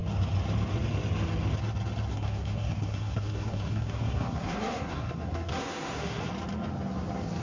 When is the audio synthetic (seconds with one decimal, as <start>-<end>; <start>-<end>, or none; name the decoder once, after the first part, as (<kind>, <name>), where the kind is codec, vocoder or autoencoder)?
2.1-6.3 (codec, SNAC)